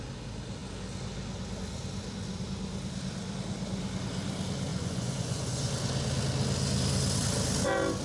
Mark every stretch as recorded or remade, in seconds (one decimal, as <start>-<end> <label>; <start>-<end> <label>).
0.0-4.7 recorded; 4.7-5.7 remade; 5.7-8.0 recorded